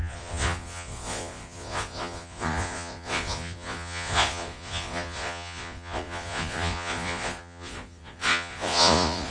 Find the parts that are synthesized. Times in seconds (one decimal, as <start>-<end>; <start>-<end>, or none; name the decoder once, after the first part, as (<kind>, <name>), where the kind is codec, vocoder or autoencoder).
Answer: 0.0-9.3 (vocoder, Vocos)